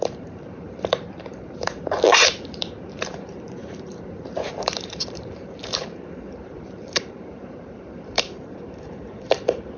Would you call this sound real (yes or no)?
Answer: no